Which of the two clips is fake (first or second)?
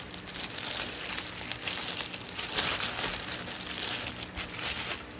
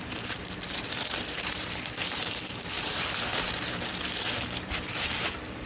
second